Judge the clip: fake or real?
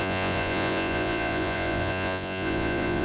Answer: fake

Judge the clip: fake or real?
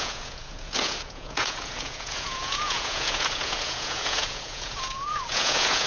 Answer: fake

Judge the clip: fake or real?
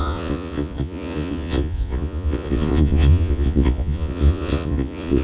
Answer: fake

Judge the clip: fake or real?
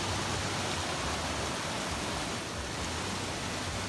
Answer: real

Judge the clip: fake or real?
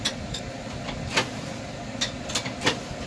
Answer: real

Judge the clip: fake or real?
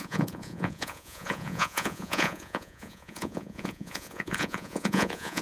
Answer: fake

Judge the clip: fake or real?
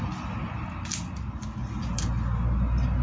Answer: real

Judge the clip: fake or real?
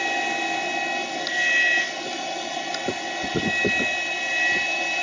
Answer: real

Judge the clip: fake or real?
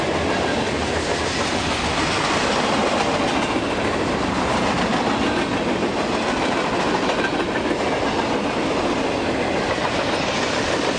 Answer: real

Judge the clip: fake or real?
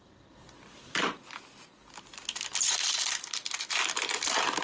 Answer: real